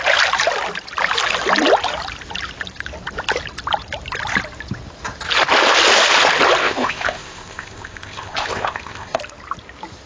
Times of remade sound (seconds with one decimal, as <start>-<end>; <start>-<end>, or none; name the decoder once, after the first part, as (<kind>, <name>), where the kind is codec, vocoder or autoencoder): 6.6-9.2 (codec, ZipCodec)